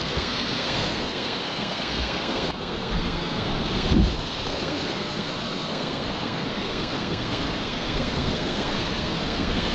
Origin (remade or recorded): remade